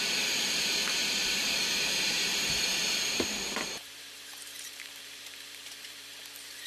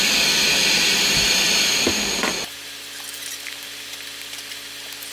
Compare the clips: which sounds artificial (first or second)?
first